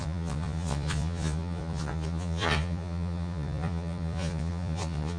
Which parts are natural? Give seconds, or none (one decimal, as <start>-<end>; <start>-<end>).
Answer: none